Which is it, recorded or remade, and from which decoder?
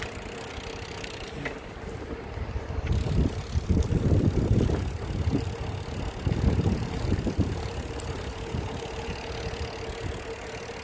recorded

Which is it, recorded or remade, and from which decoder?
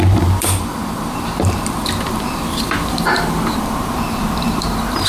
remade, vocoder, BigVGAN v2